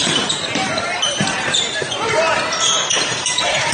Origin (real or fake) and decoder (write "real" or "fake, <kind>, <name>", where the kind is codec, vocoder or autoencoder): fake, vocoder, BigVGAN v2